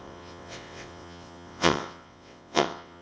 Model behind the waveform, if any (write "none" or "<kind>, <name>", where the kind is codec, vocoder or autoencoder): vocoder, WaveNeXt